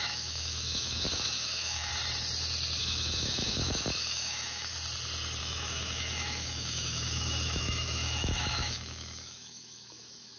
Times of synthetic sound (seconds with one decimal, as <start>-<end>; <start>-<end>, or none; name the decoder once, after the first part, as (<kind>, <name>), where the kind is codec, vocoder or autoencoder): 0.0-1.9 (autoencoder, DAC-VAE); 2.8-4.7; 5.4-10.4